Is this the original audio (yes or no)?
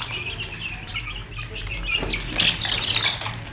yes